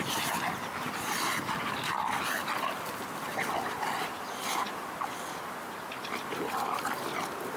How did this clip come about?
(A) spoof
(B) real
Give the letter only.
B